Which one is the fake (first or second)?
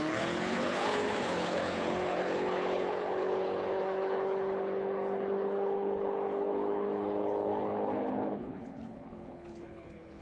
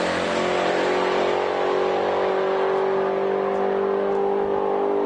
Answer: first